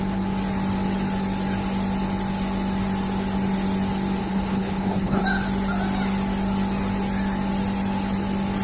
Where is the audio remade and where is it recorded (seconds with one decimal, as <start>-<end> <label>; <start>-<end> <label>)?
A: 0.0-4.2 recorded; 4.2-5.2 remade; 5.2-8.6 recorded